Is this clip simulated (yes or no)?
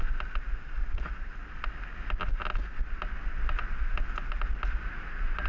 no